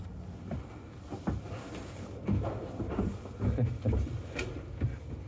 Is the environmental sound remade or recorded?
recorded